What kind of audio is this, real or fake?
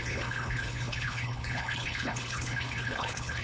fake